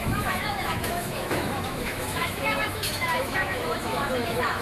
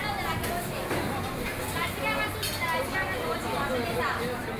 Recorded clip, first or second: second